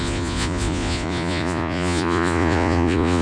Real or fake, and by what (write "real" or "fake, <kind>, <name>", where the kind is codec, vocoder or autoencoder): fake, vocoder, Vocos